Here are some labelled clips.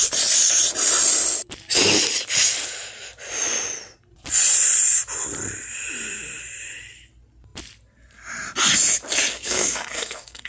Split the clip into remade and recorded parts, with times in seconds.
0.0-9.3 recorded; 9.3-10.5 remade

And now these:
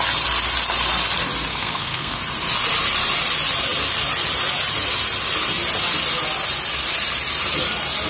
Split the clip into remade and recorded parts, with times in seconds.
0.0-1.5 recorded; 1.5-2.2 remade; 2.2-8.1 recorded

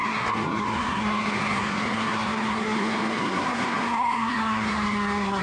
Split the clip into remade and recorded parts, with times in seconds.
0.0-5.4 remade